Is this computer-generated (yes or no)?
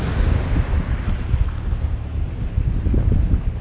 no